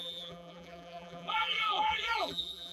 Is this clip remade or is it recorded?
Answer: remade